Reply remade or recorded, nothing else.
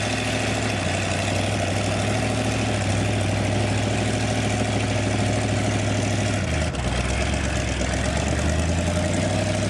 recorded